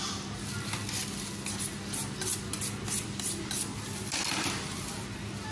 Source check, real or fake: real